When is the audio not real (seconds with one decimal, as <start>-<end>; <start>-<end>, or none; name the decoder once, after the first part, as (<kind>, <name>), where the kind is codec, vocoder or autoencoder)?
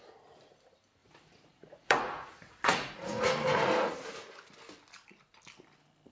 1.0-3.3 (vocoder, Vocos)